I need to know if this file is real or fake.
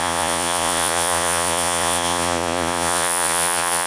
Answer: fake